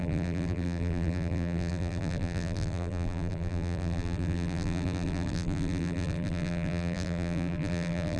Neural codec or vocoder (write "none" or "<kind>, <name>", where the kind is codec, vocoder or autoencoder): vocoder, BigVGAN v2